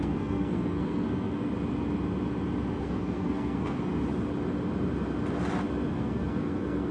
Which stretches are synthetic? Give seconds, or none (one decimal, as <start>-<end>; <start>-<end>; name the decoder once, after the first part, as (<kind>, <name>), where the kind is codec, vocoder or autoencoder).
0.0-1.5 (codec, SNAC); 2.8-3.9; 5.9-6.9